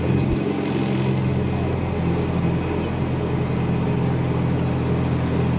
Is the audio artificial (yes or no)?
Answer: no